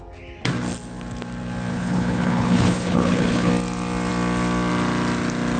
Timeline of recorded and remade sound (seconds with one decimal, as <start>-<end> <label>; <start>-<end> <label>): 0.0-1.7 recorded; 1.7-3.5 remade; 3.5-5.6 recorded